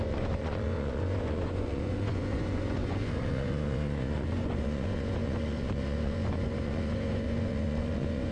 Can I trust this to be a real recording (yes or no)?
no